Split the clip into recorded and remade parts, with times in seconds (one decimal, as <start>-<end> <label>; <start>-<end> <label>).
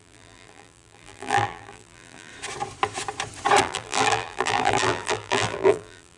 0.0-2.3 remade; 2.3-3.6 recorded; 3.6-6.2 remade